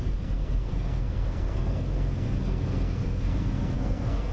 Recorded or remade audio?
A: remade